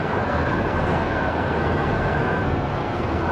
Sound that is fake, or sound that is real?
fake